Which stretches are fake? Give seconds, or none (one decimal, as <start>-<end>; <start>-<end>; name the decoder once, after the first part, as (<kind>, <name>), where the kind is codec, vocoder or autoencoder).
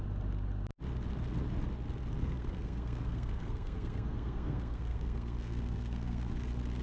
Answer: 2.2-6.3 (codec, SNAC)